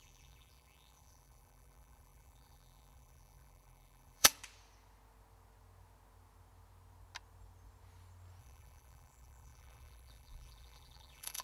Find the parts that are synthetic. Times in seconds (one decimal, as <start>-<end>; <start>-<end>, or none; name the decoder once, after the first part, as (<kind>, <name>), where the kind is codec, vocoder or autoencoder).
0.0-4.3 (vocoder, BigVGAN v2); 8.4-11.4